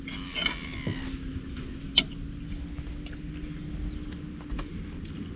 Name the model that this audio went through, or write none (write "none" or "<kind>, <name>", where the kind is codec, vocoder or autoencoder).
none